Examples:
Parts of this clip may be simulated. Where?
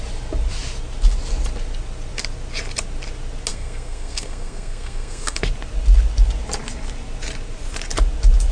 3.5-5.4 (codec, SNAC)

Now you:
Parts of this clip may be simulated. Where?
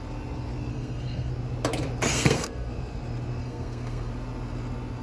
0.7-1.3 (codec, SNAC); 2.1-2.7; 3.4-4.1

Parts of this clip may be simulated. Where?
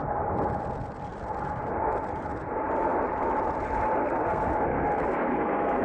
4.0-5.8 (codec, SNAC)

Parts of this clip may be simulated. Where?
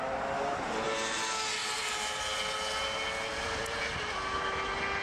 3.3-3.8 (vocoder, BigVGAN v2)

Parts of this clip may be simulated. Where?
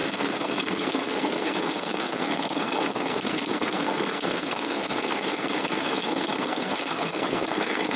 0.0-8.0 (codec, SNAC)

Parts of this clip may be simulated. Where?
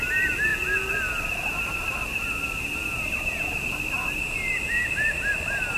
none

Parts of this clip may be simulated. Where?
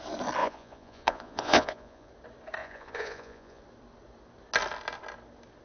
0.4-2.1 (vocoder, Vocos); 2.6-3.6